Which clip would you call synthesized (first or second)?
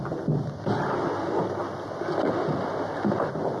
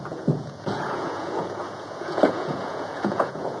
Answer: second